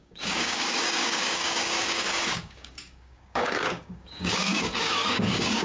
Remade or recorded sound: remade